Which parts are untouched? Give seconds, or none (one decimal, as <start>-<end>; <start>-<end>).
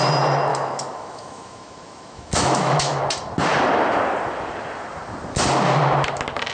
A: 0.0-0.5; 3.0-6.5